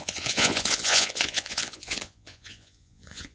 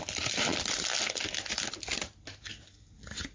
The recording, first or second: second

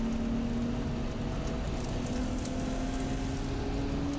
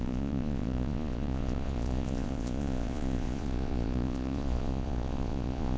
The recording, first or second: first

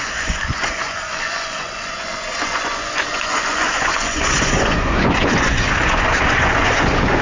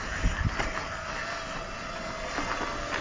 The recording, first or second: second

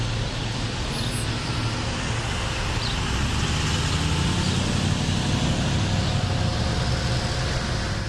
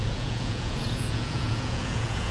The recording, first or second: first